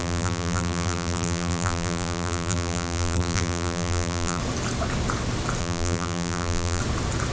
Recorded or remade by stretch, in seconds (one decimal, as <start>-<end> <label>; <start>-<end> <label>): 0.0-4.4 remade; 4.4-5.6 recorded; 5.6-6.8 remade; 6.8-7.3 recorded